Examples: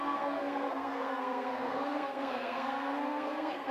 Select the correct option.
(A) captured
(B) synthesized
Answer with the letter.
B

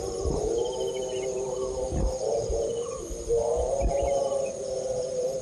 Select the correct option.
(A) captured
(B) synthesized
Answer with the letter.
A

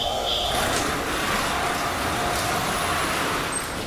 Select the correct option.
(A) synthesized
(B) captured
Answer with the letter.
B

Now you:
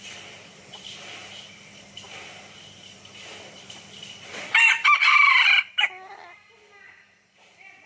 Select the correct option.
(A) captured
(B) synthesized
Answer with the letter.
B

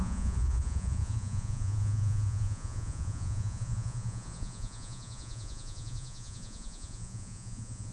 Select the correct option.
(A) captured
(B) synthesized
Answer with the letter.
B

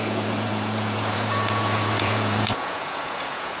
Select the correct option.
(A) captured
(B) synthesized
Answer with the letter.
B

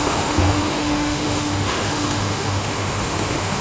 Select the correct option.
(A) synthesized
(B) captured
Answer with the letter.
A